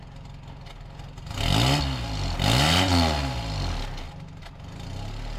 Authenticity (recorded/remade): recorded